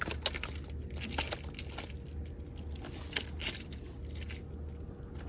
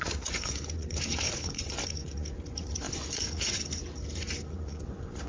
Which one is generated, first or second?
second